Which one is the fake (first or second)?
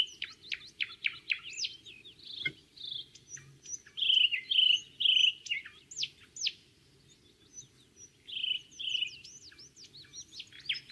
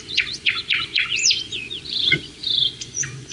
second